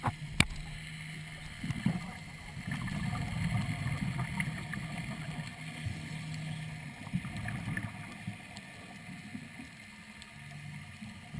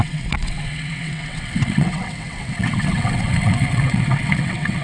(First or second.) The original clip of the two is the first